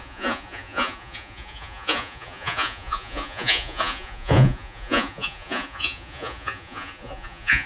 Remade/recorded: remade